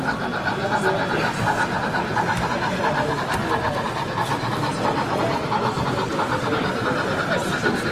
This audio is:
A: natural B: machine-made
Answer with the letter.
A